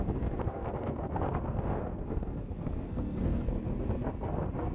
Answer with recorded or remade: remade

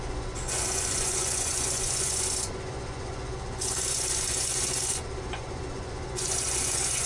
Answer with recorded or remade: remade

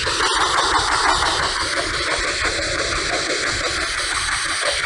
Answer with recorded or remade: remade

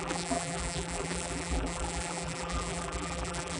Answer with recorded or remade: remade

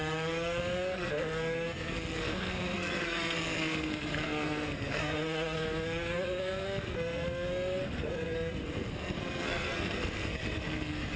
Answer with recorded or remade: remade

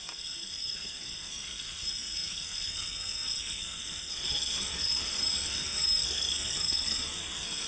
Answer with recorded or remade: remade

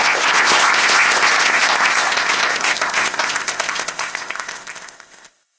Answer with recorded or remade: remade